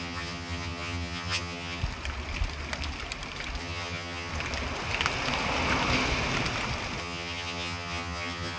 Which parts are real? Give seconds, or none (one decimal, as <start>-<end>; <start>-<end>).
1.8-3.6; 4.3-7.0